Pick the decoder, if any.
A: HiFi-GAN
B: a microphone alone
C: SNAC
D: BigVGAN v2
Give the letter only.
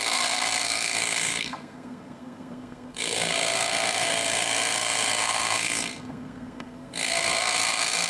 C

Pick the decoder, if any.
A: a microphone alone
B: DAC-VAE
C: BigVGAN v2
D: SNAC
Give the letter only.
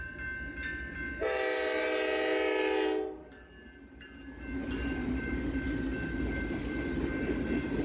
A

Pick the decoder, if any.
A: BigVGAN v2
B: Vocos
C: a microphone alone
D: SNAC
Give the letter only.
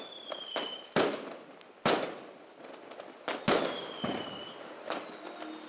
C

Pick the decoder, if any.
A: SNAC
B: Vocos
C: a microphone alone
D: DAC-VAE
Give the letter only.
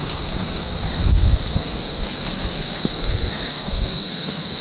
A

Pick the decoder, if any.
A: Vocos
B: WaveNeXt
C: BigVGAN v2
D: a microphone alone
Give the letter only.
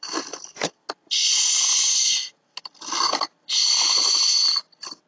D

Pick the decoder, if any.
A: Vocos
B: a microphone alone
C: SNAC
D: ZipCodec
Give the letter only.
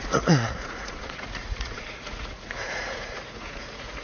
A